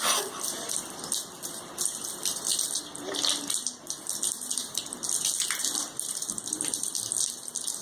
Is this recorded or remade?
recorded